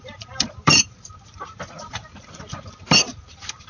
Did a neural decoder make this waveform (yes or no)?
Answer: yes